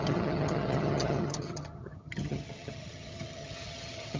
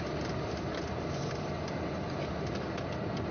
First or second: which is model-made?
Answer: first